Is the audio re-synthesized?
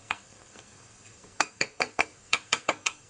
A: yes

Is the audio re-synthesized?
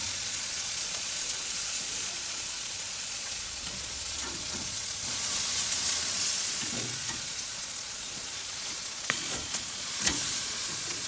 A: yes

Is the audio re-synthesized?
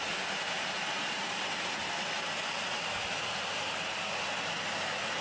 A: no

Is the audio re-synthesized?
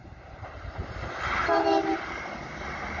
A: no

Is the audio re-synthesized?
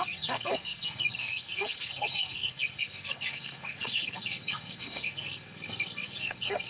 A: yes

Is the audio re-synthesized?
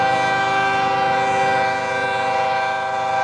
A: no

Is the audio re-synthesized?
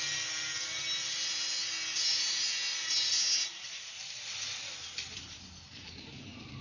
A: no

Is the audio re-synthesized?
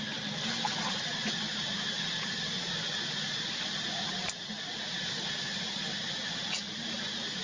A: no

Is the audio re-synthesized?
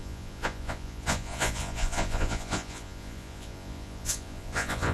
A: yes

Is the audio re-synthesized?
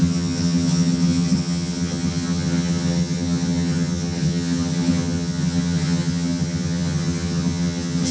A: yes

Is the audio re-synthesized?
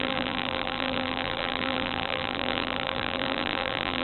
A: yes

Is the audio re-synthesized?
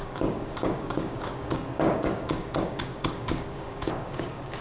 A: yes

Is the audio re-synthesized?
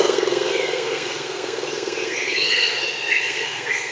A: yes